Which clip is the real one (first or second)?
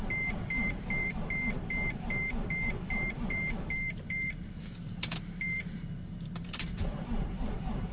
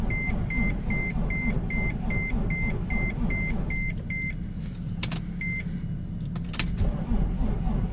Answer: second